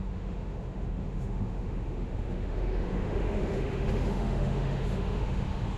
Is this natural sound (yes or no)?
no